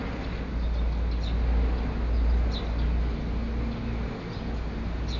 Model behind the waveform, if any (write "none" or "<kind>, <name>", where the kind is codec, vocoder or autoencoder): none